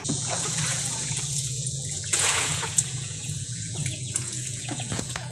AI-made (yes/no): yes